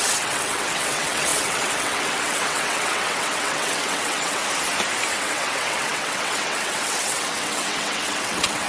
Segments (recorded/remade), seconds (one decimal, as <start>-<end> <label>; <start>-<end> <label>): 0.0-4.4 remade; 4.4-5.1 recorded; 5.1-8.7 remade